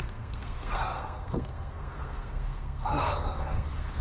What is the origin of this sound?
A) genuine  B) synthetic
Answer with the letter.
B